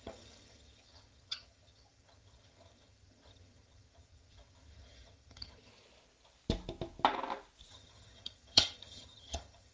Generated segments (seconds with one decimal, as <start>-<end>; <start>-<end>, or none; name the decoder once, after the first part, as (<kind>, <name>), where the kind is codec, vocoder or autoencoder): 0.0-5.7 (vocoder, HiFi-GAN); 7.7-9.7